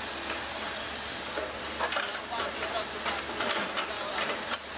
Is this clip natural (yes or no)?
yes